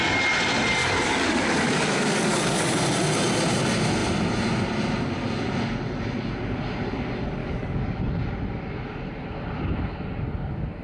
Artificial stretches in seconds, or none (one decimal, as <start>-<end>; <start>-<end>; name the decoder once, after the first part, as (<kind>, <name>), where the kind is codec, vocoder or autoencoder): 0.8-2.7 (codec, DAC); 7.4-8.0